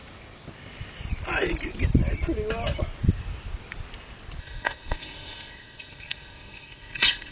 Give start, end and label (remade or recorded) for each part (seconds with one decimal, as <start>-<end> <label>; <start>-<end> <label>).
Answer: 0.0-4.4 recorded; 4.4-7.3 remade